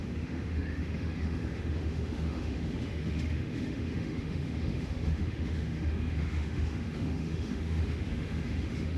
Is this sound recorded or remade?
remade